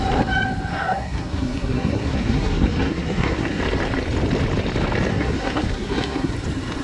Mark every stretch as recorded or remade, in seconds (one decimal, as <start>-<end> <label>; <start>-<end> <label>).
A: 0.0-0.7 recorded; 0.7-3.6 remade; 3.6-5.1 recorded; 5.1-6.3 remade; 6.3-6.8 recorded